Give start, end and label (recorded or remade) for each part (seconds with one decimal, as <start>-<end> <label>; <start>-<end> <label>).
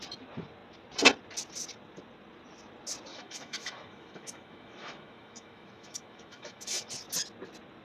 0.0-3.1 recorded; 3.1-6.9 remade; 6.9-7.8 recorded